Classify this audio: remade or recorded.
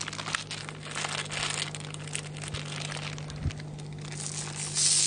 recorded